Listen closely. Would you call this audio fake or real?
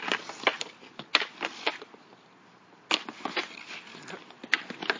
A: real